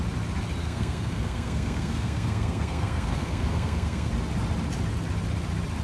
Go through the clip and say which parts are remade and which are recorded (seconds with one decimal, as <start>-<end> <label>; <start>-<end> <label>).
0.0-0.6 recorded; 0.6-4.1 remade; 4.1-5.8 recorded